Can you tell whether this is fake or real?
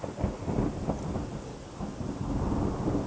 real